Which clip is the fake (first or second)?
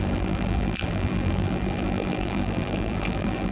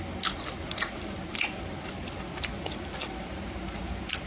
first